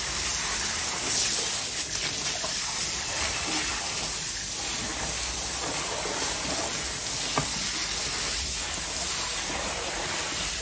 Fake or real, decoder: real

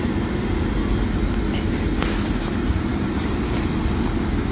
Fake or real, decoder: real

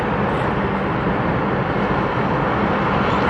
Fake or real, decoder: real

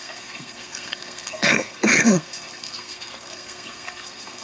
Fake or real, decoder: fake, codec, SNAC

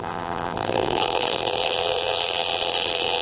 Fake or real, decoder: fake, vocoder, BigVGAN v2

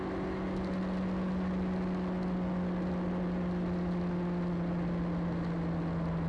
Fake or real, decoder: real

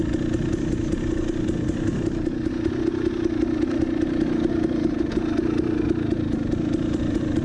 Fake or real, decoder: real